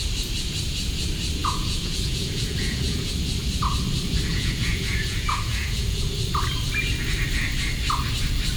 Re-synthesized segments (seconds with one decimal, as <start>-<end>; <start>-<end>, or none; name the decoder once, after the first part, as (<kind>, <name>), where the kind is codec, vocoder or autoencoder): 1.4-3.1 (vocoder, Vocos); 4.3-6.1